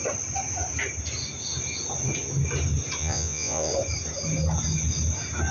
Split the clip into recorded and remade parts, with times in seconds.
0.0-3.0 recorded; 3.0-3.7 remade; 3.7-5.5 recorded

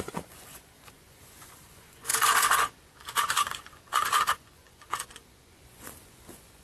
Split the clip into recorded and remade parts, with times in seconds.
0.0-6.6 remade